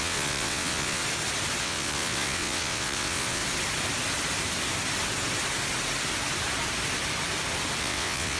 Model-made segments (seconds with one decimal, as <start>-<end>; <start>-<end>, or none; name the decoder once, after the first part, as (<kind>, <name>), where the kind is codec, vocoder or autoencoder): 0.0-1.0 (vocoder, WaveNeXt); 1.6-3.4; 7.8-8.4

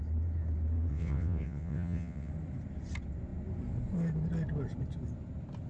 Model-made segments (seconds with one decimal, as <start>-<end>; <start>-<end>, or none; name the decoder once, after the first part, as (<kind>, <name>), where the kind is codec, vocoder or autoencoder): 0.9-2.3 (vocoder, WaveNeXt)

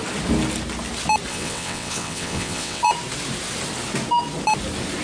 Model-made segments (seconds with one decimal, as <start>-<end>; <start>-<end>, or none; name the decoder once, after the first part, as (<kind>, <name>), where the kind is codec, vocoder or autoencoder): 1.3-2.8 (vocoder, WaveNeXt)

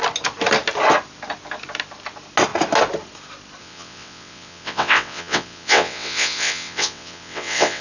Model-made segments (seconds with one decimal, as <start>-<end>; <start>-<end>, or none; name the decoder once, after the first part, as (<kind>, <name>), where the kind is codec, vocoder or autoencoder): 3.6-7.8 (vocoder, WaveNeXt)